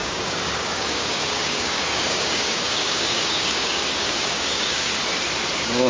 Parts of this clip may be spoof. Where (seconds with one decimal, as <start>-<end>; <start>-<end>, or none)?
0.0-4.9; 5.5-5.9